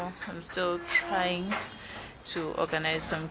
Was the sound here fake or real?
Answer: real